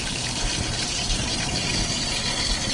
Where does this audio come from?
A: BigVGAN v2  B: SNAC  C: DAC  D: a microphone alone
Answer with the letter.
A